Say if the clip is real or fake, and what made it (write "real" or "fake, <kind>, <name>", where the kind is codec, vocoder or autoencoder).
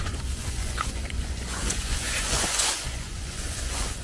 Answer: fake, vocoder, Vocos